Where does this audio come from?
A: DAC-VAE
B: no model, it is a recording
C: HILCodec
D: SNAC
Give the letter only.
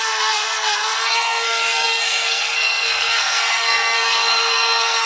D